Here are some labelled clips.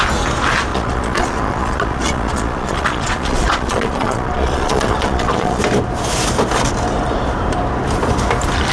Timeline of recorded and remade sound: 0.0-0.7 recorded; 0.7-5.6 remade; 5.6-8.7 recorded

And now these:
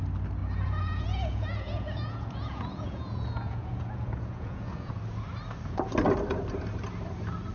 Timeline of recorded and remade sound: 0.0-0.4 recorded; 0.4-4.9 remade; 4.9-7.5 recorded

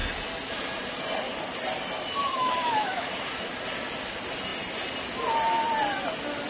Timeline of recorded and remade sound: 0.0-2.2 recorded; 2.2-3.1 remade; 3.1-6.5 recorded

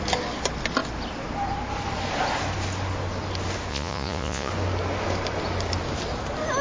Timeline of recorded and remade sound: 0.0-3.7 recorded; 3.7-4.5 remade; 4.5-6.6 recorded

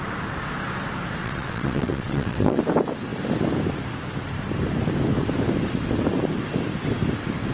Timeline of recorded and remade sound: 0.0-1.2 recorded; 1.2-2.6 remade; 2.6-7.5 recorded

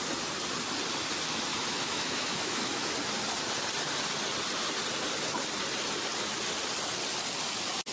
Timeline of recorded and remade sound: 0.0-1.5 recorded; 1.5-2.9 remade; 2.9-7.9 recorded